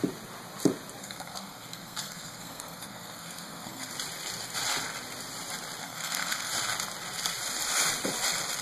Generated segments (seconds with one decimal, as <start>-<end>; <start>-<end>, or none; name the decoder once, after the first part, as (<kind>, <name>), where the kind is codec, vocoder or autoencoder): 1.0-3.9 (codec, SNAC); 5.8-6.5